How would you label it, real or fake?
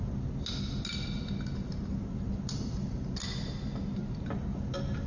real